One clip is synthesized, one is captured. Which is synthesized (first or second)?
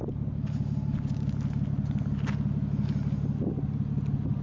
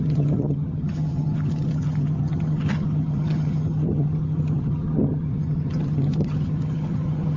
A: second